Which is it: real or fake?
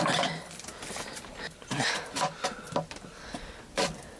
fake